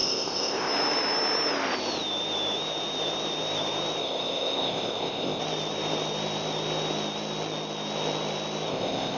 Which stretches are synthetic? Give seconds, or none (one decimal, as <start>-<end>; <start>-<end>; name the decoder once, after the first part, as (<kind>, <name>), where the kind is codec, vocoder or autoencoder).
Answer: 0.0-0.7 (codec, ZipCodec); 4.0-5.4; 8.7-9.2